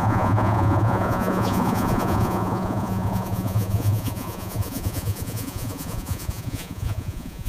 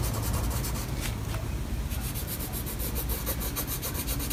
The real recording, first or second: second